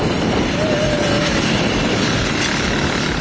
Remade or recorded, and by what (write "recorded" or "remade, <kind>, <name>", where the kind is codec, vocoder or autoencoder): remade, vocoder, BigVGAN v2